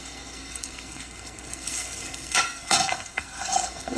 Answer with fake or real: fake